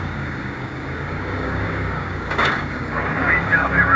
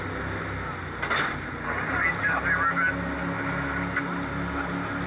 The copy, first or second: first